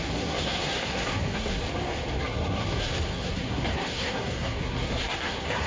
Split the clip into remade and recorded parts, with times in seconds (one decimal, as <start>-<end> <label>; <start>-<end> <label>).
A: 0.0-1.6 remade; 1.6-2.2 recorded; 2.2-5.7 remade